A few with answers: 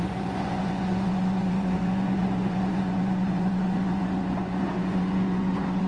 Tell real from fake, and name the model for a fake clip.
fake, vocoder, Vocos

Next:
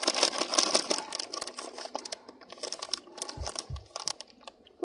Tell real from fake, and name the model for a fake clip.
real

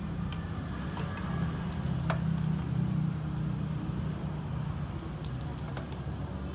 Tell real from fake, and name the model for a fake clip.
real